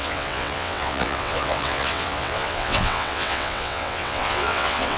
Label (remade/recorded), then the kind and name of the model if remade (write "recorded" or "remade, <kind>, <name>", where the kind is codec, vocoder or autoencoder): remade, vocoder, WaveNeXt